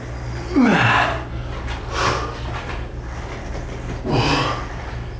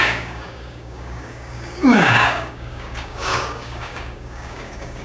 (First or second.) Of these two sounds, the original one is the first